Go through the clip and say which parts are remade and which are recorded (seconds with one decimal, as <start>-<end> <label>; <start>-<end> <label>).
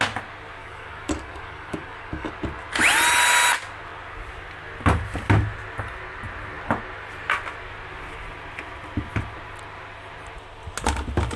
0.0-0.6 recorded; 0.6-2.3 remade; 2.3-11.4 recorded